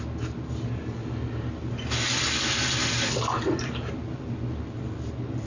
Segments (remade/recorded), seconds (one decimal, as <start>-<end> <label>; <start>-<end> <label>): 0.0-5.5 recorded